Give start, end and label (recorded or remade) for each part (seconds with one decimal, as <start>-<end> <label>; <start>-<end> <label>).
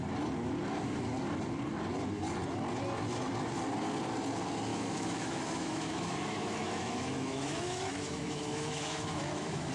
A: 0.0-4.7 recorded; 4.7-9.7 remade